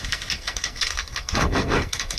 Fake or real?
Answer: fake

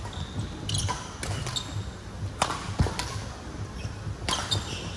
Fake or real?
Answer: real